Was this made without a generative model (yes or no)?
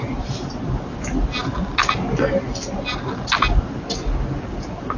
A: yes